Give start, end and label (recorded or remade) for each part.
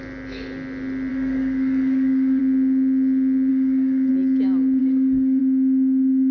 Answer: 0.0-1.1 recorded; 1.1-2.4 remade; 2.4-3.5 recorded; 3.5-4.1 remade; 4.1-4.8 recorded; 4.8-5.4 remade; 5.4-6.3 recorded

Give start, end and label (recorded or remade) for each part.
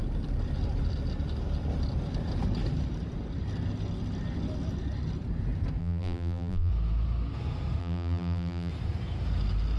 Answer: 0.0-5.8 recorded; 5.8-6.7 remade; 6.7-7.8 recorded; 7.8-8.7 remade; 8.7-9.8 recorded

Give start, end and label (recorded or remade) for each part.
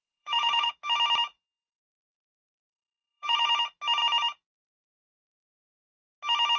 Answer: 0.0-0.7 remade; 0.7-1.3 recorded; 1.3-3.5 remade; 3.5-6.6 recorded